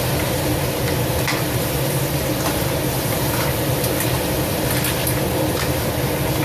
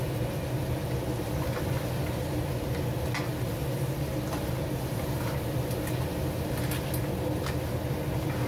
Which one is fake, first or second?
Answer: first